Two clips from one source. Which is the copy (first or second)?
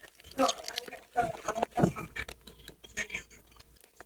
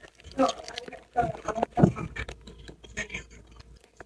second